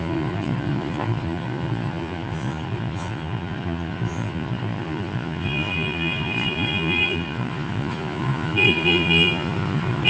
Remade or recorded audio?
remade